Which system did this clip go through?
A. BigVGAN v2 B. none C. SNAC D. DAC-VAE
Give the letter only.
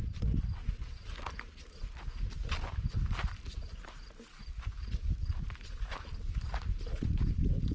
B